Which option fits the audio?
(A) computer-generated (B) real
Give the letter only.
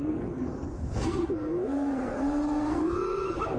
A